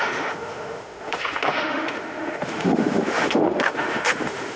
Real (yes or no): no